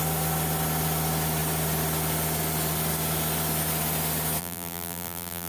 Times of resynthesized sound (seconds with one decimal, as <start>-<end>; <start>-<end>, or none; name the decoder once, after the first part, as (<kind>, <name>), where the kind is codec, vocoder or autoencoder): 4.4-5.5 (vocoder, BigVGAN v2)